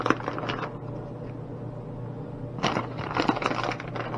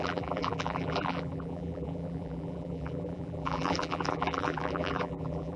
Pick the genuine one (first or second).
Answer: first